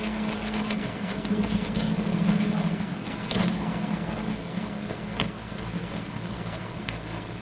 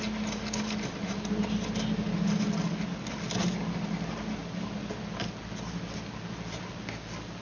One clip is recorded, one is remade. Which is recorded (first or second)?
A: second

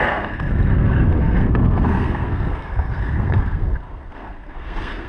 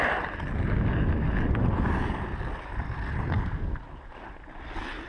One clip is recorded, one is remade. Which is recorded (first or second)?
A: second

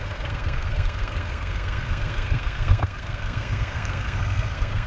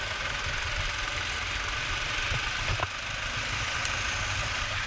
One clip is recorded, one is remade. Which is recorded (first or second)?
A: second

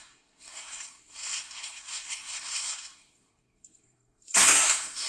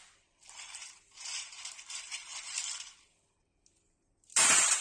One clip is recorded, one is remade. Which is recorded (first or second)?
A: second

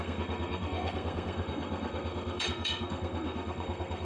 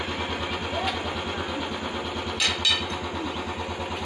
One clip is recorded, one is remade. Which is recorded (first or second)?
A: second